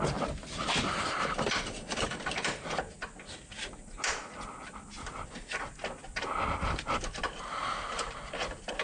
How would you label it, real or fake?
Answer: real